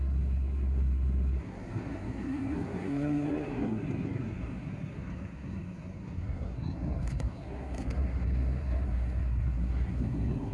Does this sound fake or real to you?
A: fake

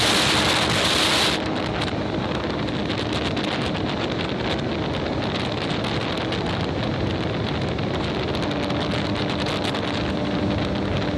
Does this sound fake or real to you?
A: real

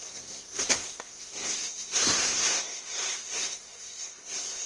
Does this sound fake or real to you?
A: fake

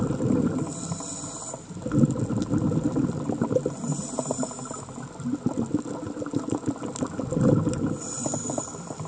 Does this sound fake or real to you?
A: real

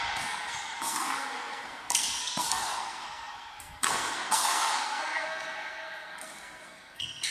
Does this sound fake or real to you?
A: fake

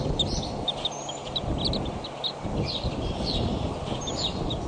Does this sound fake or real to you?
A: real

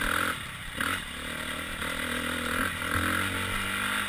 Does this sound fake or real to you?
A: real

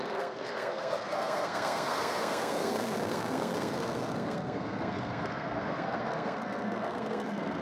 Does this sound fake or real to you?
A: fake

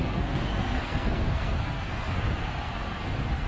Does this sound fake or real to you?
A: fake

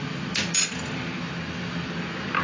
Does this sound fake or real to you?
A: real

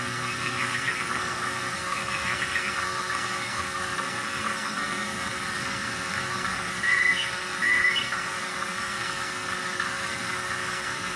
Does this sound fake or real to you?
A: fake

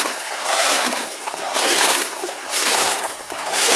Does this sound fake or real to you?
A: fake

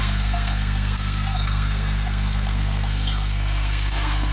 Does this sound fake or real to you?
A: fake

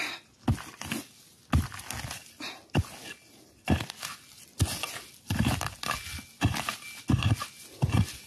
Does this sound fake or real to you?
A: real